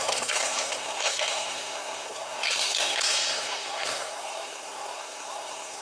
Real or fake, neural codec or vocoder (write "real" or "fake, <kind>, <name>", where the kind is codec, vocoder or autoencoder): fake, codec, SNAC